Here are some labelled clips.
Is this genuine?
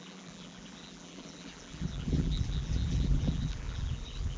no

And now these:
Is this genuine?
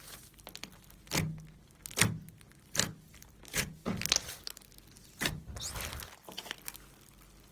yes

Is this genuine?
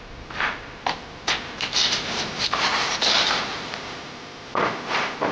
no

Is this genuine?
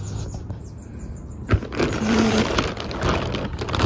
yes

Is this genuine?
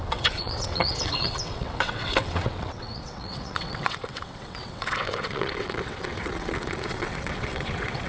no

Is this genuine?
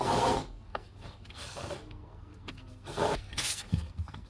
no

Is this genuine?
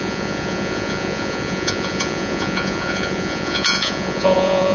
no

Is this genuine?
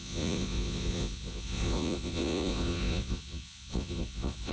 no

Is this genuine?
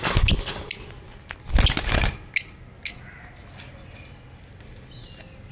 yes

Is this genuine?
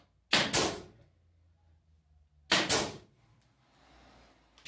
yes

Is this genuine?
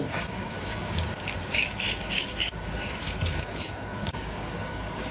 no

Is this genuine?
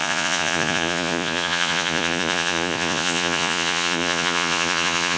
no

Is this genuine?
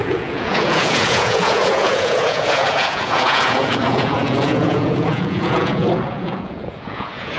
no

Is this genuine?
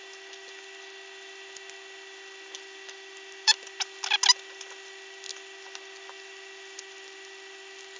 yes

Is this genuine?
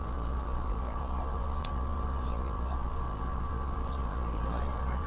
no